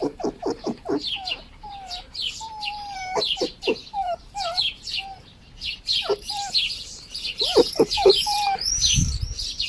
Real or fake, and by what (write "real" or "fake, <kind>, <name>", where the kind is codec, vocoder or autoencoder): fake, vocoder, BigVGAN v2